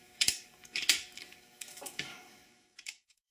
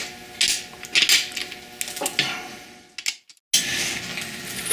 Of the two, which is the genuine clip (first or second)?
second